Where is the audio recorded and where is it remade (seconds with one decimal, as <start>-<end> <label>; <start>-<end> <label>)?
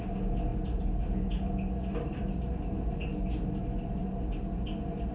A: 0.0-5.1 recorded